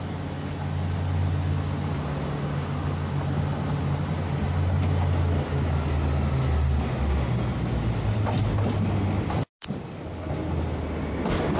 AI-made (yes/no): no